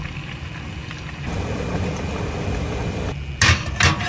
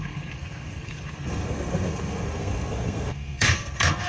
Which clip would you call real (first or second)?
first